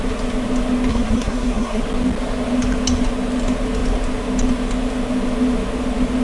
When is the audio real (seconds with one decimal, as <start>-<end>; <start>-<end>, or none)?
0.0-0.9; 1.8-6.2